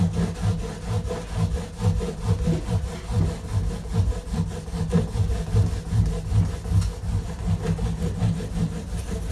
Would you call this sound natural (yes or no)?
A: yes